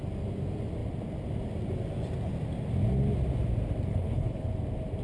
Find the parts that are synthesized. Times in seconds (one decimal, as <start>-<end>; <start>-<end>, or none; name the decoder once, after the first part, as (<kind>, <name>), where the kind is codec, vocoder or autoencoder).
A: 3.9-4.5 (codec, HILCodec)